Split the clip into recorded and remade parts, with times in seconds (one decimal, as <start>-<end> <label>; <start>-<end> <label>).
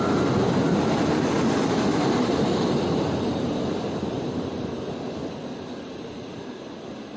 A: 0.0-1.9 recorded; 1.9-5.3 remade; 5.3-7.2 recorded